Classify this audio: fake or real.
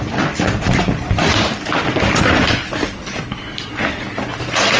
real